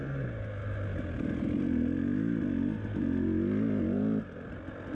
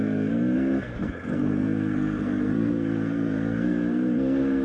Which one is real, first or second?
first